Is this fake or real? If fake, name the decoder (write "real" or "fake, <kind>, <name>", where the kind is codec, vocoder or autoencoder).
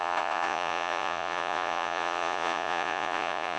fake, vocoder, Vocos